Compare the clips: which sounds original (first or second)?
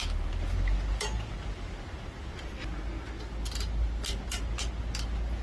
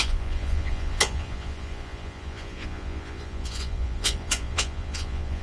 first